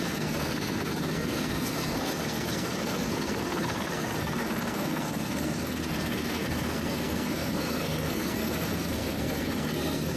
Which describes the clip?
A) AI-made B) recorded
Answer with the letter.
A